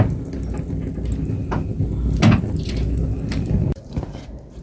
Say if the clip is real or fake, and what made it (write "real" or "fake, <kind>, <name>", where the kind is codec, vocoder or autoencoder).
real